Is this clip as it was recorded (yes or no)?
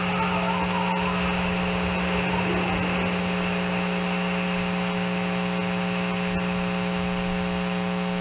yes